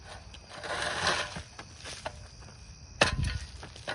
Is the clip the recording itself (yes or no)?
yes